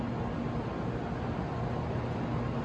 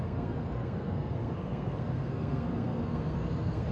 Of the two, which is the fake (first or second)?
second